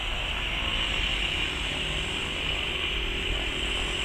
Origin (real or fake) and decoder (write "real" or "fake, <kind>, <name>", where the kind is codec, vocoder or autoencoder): real